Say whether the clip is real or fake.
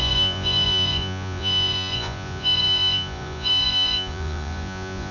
fake